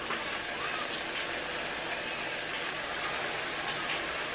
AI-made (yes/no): no